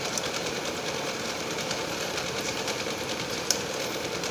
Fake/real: fake